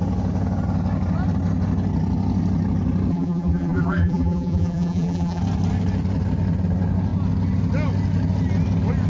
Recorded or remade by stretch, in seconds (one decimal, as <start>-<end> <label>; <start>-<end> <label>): 0.0-3.1 recorded; 3.1-5.4 remade; 5.4-9.1 recorded